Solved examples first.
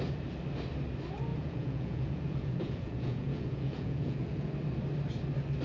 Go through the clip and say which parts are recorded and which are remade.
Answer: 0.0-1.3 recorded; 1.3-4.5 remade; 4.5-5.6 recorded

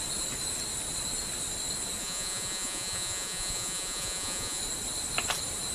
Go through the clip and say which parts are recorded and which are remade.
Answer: 0.0-2.0 recorded; 2.0-4.6 remade; 4.6-5.7 recorded

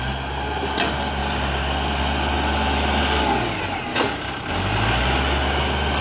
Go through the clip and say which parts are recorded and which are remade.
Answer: 0.0-6.0 recorded

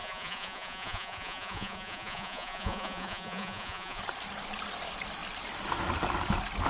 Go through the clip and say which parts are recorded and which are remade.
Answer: 0.0-4.0 remade; 4.0-6.7 recorded